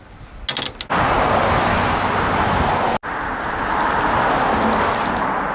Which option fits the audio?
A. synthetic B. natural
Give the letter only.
B